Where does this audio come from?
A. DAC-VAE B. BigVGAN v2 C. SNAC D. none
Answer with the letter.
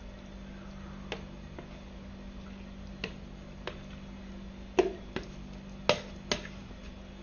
D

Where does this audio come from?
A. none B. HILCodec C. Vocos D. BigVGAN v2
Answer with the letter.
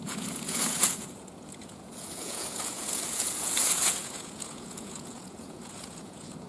C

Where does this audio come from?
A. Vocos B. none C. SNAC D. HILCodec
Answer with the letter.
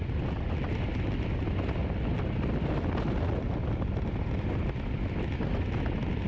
B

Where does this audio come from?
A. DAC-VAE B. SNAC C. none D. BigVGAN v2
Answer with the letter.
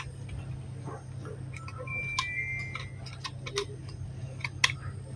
C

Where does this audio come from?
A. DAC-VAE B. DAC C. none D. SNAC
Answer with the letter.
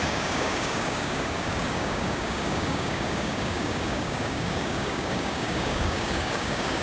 B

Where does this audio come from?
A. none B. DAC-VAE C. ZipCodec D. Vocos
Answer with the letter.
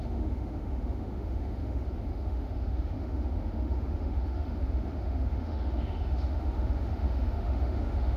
B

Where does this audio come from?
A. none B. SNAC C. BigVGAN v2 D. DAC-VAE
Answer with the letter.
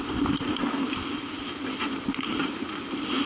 A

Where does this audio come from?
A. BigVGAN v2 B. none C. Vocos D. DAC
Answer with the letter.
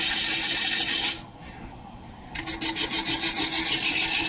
B